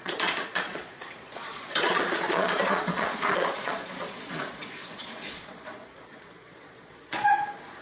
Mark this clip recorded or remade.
remade